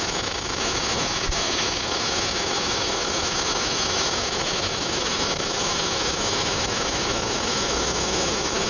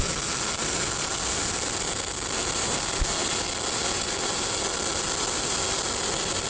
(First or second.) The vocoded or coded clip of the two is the first